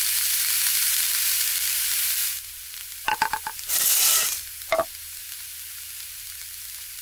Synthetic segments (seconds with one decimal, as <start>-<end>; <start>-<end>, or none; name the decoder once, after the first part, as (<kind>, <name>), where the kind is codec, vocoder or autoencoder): 0.0-5.2 (vocoder, BigVGAN v2); 6.1-7.0